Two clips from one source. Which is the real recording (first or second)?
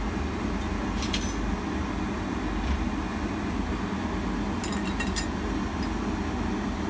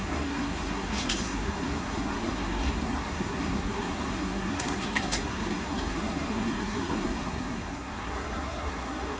first